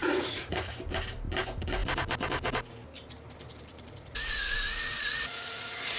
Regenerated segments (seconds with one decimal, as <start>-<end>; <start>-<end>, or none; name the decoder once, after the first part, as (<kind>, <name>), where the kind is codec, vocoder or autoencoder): 0.0-0.7 (vocoder, Vocos); 3.7-6.0